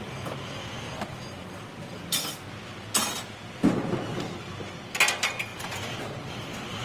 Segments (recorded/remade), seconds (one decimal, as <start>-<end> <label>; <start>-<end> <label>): 0.0-6.8 recorded